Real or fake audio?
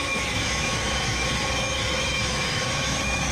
fake